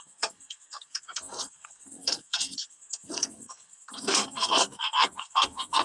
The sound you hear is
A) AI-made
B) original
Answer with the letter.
A